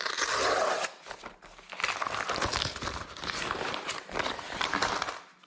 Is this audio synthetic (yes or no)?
no